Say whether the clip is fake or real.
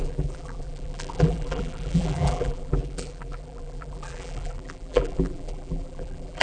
fake